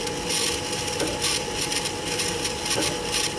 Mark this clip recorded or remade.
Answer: recorded